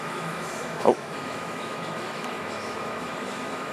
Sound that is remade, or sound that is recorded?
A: remade